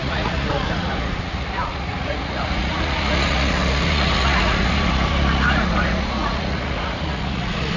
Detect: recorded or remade remade